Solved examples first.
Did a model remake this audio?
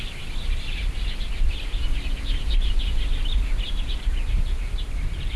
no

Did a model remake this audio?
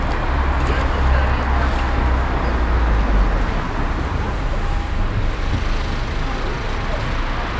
no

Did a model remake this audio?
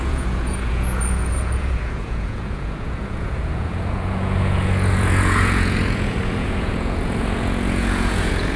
yes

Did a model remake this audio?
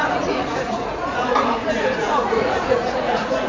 yes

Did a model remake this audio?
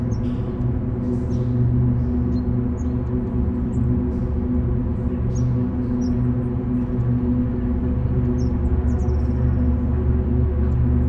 no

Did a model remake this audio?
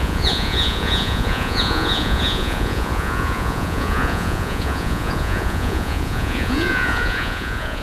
yes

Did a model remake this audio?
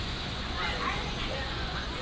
yes